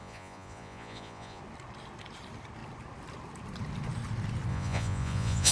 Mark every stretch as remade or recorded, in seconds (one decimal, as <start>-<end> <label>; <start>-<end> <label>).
0.0-1.4 remade; 1.4-4.5 recorded; 4.5-5.5 remade